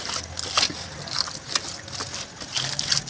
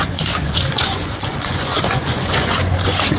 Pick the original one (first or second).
first